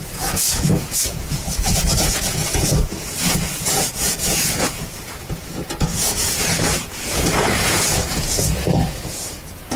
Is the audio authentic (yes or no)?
no